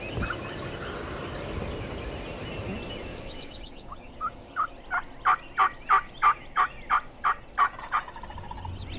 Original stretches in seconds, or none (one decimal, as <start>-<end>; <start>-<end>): 0.0-3.1; 4.7-9.0